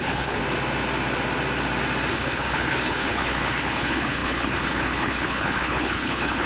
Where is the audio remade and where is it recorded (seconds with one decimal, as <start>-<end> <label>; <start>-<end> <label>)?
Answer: 0.0-0.4 remade; 0.4-2.1 recorded; 2.1-6.5 remade